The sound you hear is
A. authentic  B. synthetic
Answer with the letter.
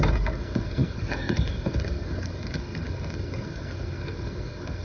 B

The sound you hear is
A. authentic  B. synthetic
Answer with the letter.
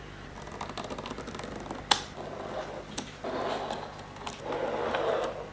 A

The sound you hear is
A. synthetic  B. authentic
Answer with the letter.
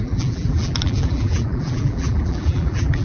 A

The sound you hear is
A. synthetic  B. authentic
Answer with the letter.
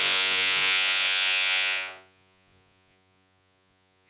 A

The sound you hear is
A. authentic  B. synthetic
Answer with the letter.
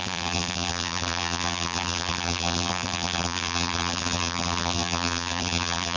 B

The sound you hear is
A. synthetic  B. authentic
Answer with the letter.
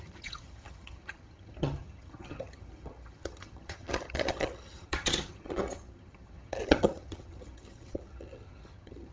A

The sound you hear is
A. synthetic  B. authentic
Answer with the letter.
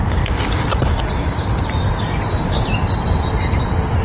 B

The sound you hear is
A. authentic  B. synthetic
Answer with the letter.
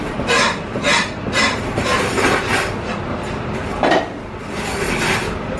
A